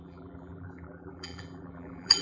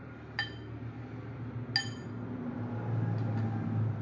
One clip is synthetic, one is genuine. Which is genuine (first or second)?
second